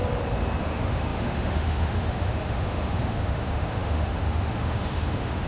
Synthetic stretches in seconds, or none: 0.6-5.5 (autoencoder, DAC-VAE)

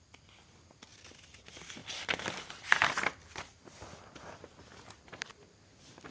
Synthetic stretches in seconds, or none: 1.8-5.1 (vocoder, BigVGAN v2)